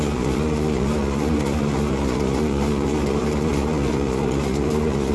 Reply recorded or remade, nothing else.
remade